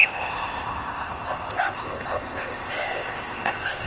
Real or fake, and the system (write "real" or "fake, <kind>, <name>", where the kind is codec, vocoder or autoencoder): fake, codec, ZipCodec